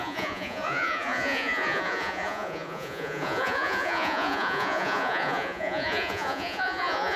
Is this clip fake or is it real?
fake